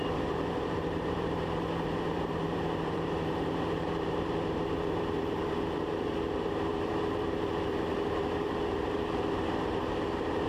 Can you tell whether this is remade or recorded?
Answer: remade